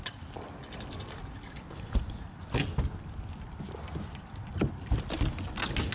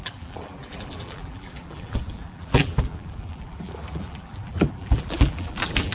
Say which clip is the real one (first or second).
first